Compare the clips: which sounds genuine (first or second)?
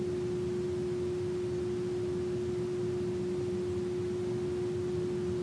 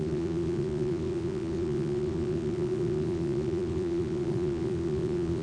first